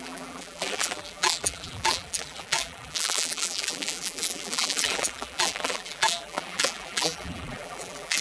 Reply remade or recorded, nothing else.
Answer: remade